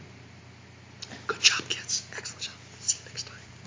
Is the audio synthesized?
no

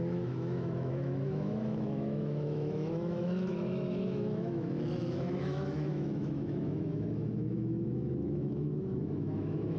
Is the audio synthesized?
yes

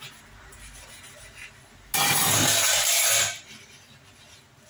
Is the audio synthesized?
no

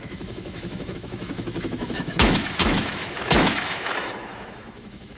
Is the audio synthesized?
yes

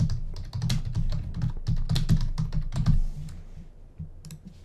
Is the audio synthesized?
no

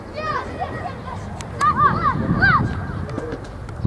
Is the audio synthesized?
no